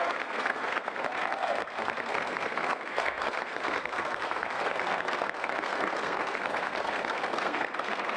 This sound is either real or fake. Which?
fake